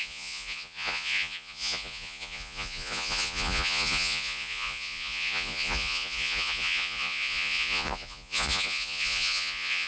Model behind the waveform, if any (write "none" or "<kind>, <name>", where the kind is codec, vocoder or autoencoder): vocoder, Vocos